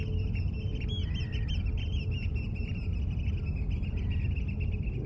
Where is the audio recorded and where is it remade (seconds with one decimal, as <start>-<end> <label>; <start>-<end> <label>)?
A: 0.0-5.1 recorded